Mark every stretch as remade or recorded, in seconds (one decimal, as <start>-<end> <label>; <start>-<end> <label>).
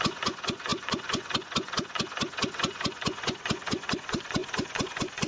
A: 0.0-5.3 remade